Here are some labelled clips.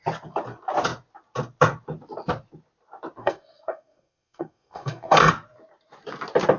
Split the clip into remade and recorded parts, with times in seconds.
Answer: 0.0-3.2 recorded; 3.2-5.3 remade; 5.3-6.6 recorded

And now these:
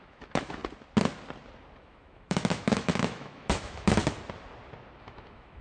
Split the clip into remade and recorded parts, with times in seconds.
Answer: 0.0-0.6 remade; 0.6-1.8 recorded; 1.8-4.0 remade; 4.0-5.0 recorded; 5.0-5.6 remade

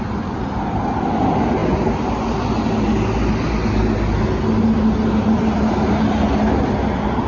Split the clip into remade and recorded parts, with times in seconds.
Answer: 0.0-7.3 recorded

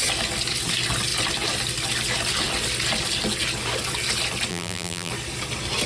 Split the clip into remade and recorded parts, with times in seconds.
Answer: 0.0-4.5 recorded; 4.5-5.1 remade; 5.1-5.9 recorded

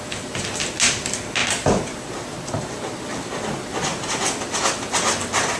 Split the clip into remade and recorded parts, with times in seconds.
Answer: 0.0-5.6 recorded

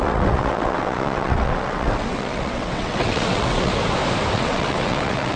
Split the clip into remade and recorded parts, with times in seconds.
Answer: 0.0-3.7 remade; 3.7-4.3 recorded; 4.3-5.4 remade